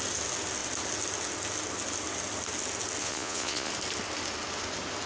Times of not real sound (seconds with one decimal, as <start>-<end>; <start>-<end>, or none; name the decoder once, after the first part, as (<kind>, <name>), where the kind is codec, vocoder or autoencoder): 3.0-3.7 (vocoder, Vocos)

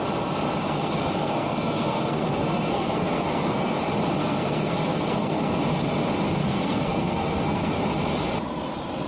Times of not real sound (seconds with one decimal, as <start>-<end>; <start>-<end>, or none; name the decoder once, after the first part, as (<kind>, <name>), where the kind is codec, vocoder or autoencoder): 0.6-3.8 (codec, SNAC); 4.2-5.6; 6.4-7.8

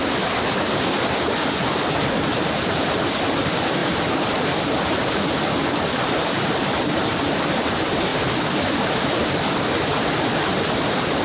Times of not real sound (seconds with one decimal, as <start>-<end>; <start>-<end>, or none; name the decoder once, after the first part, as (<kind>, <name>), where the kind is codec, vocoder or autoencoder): 3.8-7.7 (vocoder, BigVGAN v2); 8.1-8.8

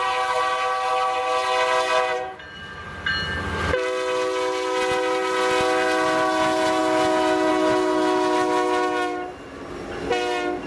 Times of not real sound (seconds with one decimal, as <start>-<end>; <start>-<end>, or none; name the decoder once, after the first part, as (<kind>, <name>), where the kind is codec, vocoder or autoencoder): none

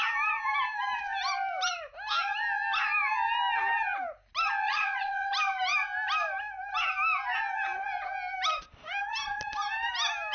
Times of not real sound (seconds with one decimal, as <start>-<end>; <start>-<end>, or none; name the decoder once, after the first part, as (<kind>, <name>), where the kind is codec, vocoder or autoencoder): 4.6-5.3 (vocoder, Vocos)